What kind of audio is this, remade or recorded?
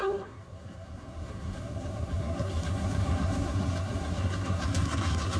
remade